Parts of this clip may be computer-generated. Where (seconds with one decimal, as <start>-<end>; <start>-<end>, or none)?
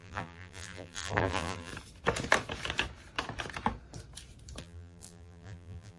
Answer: 0.0-1.7; 4.6-6.0